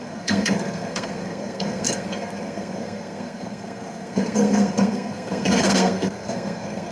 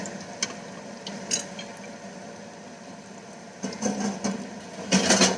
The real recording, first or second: second